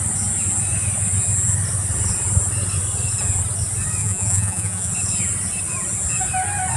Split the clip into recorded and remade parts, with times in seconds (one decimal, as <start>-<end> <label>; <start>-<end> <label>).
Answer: 0.0-4.0 recorded; 4.0-4.9 remade; 4.9-6.8 recorded